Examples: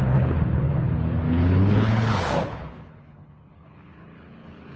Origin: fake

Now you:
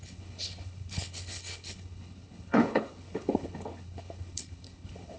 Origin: fake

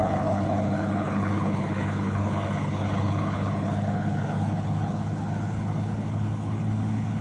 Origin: fake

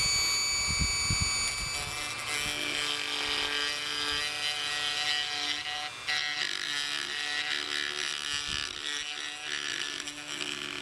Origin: real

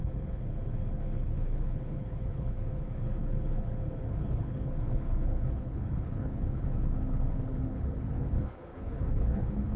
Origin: fake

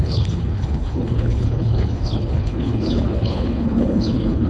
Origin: fake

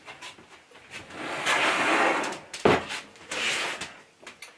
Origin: real